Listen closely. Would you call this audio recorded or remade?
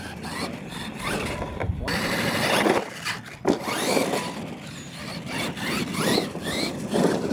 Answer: recorded